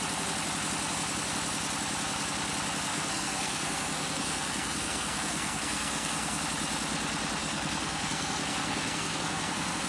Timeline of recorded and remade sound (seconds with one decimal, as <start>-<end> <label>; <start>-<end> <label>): 0.0-2.9 recorded; 2.9-6.4 remade; 6.4-7.4 recorded; 7.4-9.9 remade